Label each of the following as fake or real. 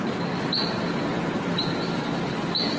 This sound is real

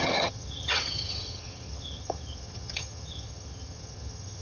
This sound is fake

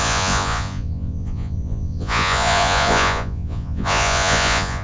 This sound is fake